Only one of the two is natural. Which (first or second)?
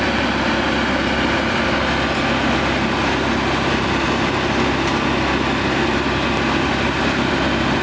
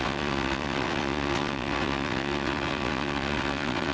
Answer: first